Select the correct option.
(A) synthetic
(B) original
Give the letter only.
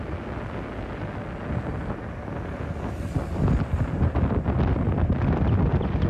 B